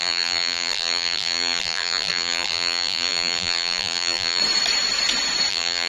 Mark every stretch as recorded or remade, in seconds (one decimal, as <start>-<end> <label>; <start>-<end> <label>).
0.0-4.4 remade; 4.4-5.5 recorded; 5.5-5.9 remade